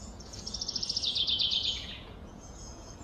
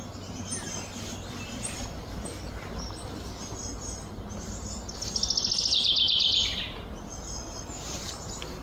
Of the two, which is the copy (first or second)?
first